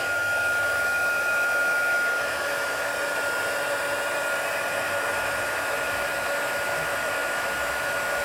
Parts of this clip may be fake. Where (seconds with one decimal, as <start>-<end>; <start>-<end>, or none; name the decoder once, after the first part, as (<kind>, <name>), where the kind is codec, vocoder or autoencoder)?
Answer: 0.0-2.9 (autoencoder, DAC-VAE); 5.1-8.2